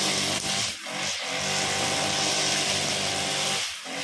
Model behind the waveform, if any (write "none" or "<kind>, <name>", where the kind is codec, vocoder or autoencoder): none